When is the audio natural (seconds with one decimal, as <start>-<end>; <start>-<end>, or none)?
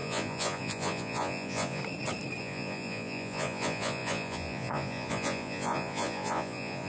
1.8-2.4